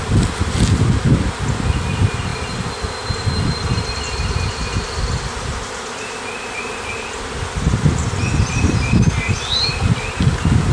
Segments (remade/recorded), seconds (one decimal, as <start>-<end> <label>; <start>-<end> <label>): 0.0-10.7 recorded